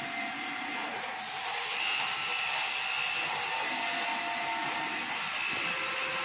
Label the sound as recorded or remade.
recorded